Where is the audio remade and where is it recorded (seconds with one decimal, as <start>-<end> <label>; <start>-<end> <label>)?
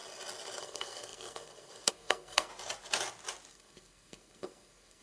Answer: 0.0-0.6 recorded; 0.6-2.5 remade; 2.5-3.5 recorded; 3.5-5.0 remade